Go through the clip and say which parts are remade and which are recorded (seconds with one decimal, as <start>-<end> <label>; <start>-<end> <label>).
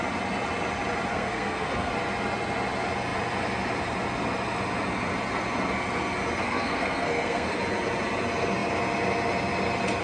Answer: 0.0-1.1 recorded; 1.1-1.9 remade; 1.9-6.4 recorded; 6.4-7.6 remade; 7.6-10.0 recorded